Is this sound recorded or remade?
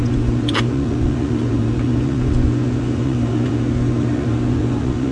remade